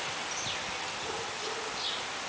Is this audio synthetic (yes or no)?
no